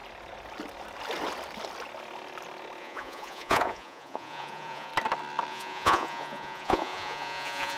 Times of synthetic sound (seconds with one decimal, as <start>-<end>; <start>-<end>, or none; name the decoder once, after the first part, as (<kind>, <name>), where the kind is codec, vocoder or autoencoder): 2.8-4.9 (vocoder, Vocos); 5.5-7.8